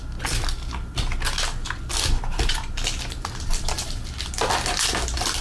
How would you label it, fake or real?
real